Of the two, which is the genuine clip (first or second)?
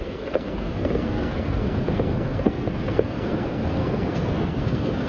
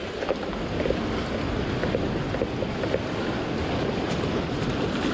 second